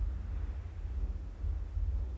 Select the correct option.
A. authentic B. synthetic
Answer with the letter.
A